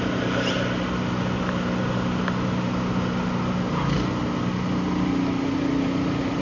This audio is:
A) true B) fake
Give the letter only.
A